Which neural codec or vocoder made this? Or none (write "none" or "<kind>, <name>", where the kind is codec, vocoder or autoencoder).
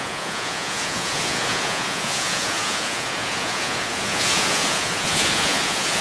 vocoder, Vocos